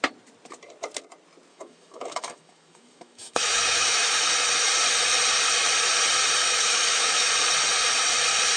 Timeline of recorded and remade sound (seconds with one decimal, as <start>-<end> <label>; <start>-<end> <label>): 0.0-1.5 recorded; 1.5-4.2 remade; 4.2-6.4 recorded; 6.4-7.3 remade; 7.3-8.6 recorded